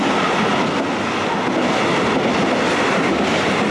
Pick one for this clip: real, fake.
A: real